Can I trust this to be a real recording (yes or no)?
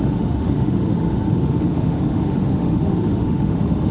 no